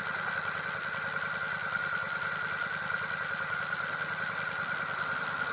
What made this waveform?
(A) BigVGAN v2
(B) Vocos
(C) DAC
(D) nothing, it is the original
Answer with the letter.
D